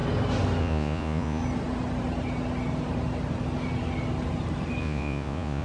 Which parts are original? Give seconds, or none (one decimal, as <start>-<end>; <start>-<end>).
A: 0.0-0.6; 1.4-4.8